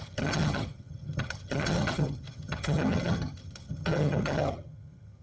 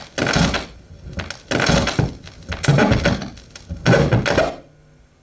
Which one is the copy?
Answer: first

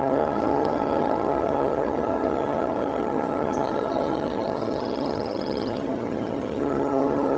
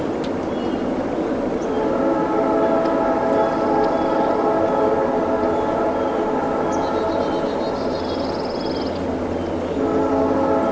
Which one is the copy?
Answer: first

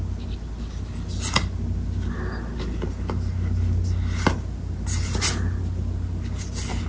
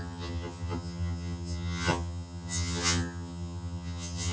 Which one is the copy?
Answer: second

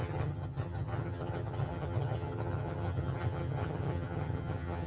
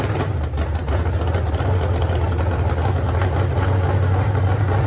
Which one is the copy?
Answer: first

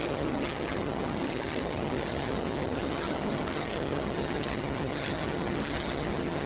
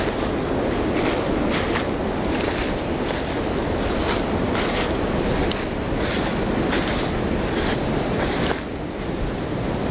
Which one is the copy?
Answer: first